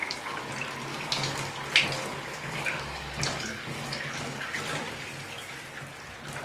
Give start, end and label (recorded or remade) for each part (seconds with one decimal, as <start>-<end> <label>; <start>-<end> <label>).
0.0-0.5 remade; 0.5-0.9 recorded; 0.9-1.5 remade; 1.5-2.0 recorded; 2.0-4.6 remade; 4.6-6.4 recorded